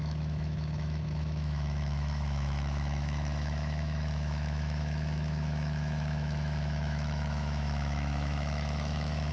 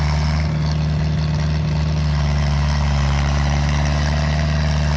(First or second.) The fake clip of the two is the first